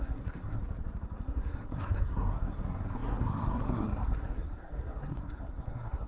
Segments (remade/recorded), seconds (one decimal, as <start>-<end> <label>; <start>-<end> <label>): 0.0-0.6 remade; 0.6-1.2 recorded; 1.2-6.1 remade